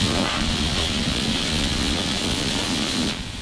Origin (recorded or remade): remade